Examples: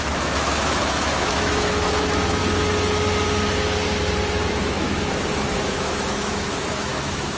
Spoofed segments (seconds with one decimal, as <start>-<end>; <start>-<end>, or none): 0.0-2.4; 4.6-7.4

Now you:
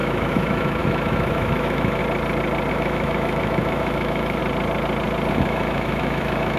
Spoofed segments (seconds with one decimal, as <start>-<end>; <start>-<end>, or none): 0.0-2.0; 2.7-4.4; 5.3-6.6

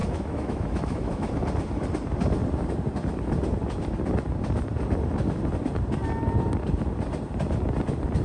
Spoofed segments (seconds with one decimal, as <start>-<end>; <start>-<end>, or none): 0.0-1.3

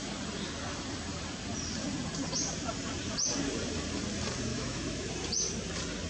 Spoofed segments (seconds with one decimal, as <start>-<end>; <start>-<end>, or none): 4.5-5.1